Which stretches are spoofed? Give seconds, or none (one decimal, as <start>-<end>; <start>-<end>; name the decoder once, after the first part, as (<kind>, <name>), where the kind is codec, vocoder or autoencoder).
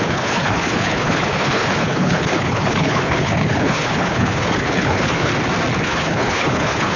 0.0-5.3 (codec, HILCodec); 5.8-7.0